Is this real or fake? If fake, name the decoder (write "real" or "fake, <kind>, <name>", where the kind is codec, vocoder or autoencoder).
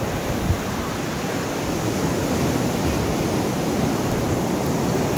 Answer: real